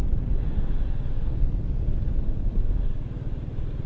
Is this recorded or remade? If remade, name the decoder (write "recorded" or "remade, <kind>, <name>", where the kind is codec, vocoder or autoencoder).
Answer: recorded